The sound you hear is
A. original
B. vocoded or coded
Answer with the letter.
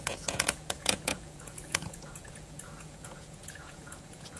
B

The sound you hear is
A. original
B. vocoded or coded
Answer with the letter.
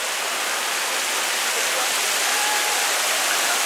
A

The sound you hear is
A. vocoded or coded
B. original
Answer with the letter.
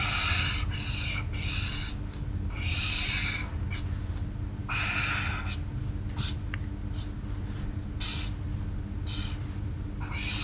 B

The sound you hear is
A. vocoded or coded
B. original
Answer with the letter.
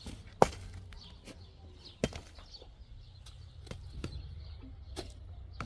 B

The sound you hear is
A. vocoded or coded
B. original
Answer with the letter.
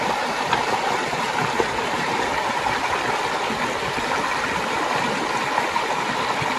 B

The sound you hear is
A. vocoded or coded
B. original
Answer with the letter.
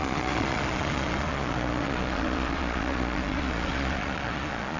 A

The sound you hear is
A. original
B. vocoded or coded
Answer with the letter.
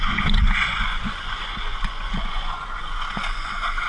B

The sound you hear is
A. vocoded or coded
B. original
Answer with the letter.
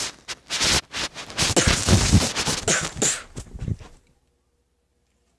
B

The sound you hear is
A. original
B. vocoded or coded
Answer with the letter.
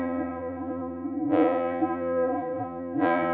B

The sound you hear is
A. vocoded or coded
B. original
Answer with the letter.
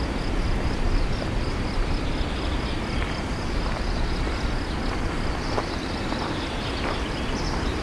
B